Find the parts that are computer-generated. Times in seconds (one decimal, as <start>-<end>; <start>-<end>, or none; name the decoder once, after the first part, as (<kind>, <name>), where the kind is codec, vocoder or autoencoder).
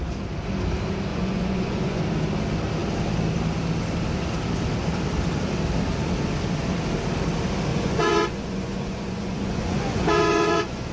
1.1-2.0 (vocoder, Vocos); 7.7-10.9